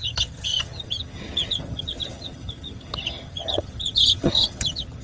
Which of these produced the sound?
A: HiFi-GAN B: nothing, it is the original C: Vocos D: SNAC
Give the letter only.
A